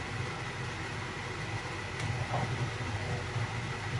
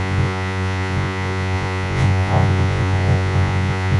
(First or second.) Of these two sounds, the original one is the first